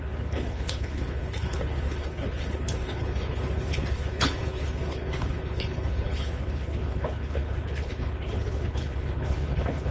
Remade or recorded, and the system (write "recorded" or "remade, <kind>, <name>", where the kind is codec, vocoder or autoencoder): remade, codec, HILCodec